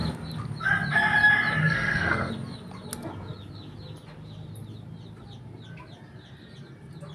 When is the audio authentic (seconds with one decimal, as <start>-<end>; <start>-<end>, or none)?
0.0-1.6; 2.3-7.1